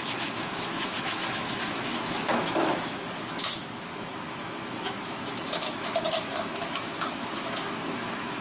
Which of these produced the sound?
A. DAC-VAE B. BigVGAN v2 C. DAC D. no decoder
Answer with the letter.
A